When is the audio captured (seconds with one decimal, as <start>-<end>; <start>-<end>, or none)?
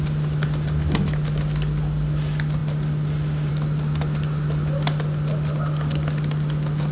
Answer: 0.0-6.9